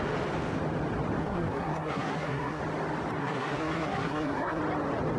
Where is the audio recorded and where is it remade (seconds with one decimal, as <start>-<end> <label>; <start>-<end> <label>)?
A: 0.0-1.2 recorded; 1.2-2.6 remade; 2.6-3.2 recorded; 3.2-4.6 remade; 4.6-5.2 recorded